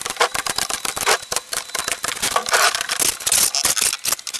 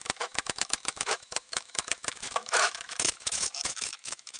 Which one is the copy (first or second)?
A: second